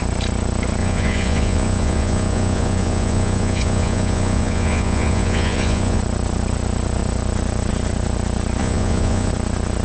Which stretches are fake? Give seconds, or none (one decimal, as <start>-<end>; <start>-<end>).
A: 0.8-6.0; 8.6-9.3

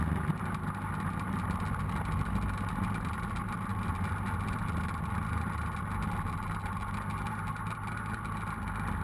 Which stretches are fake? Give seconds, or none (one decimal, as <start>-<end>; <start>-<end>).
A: none

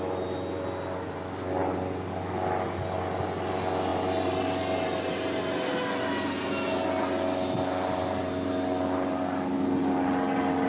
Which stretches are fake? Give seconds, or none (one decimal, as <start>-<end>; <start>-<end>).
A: none

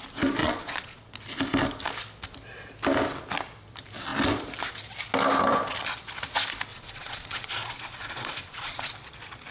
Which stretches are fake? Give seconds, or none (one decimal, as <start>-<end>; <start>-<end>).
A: 0.4-1.0; 6.7-8.9

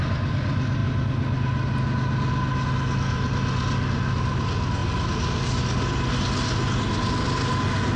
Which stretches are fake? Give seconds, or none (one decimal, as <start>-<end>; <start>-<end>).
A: none

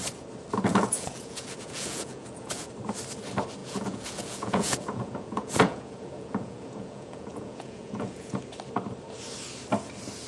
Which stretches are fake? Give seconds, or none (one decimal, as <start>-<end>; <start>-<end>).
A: 0.7-2.7; 3.6-8.4

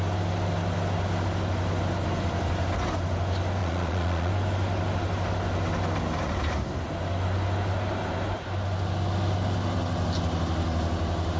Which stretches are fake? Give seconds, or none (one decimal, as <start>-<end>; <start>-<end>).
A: 3.6-4.3